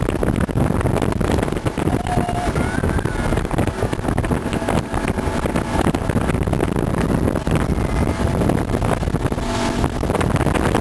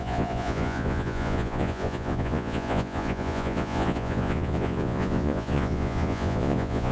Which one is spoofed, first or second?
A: second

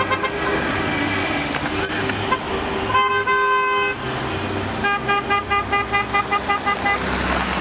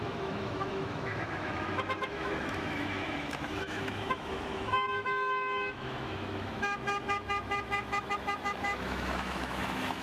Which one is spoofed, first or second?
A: second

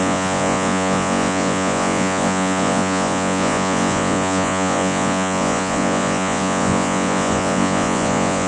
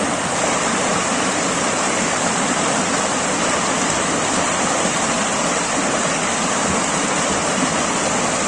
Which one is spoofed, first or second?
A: first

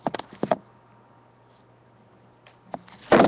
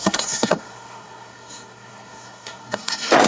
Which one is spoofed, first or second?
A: second